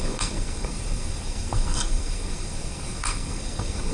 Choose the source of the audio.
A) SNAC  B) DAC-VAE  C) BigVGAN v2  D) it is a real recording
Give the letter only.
A